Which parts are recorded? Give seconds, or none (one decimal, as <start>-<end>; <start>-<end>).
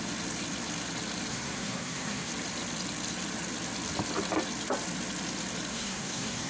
0.0-1.3; 2.3-5.7